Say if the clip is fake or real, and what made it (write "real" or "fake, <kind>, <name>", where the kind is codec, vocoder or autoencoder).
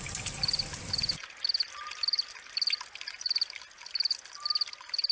real